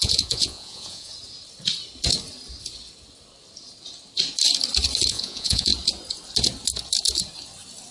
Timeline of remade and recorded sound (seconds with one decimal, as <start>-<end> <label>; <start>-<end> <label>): 0.0-1.1 remade; 1.1-5.1 recorded; 5.1-5.7 remade; 5.7-7.9 recorded